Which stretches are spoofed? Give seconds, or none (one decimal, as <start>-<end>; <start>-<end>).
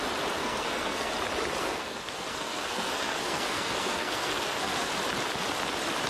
0.4-1.1; 1.6-4.9